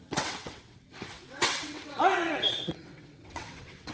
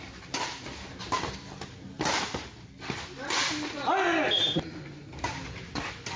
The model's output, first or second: first